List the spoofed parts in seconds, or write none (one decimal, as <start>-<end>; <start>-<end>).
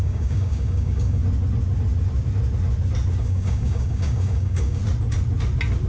0.0-1.2; 3.2-4.8